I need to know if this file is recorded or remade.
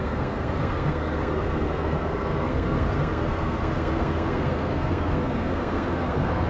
remade